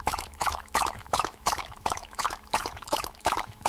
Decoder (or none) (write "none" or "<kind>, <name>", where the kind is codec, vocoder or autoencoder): autoencoder, DAC-VAE